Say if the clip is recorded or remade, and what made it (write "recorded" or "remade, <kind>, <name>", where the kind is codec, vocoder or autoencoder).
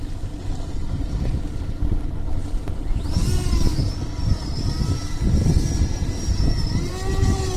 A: recorded